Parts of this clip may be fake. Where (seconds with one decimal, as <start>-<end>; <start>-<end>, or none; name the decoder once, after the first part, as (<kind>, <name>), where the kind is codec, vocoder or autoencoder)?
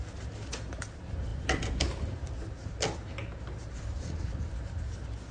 none